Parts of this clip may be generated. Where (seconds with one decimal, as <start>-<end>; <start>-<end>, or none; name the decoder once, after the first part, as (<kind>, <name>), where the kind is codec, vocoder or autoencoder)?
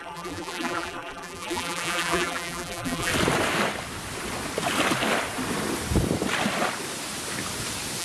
0.0-3.1 (vocoder, BigVGAN v2)